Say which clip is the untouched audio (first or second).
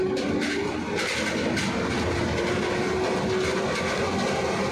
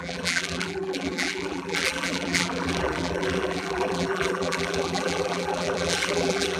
first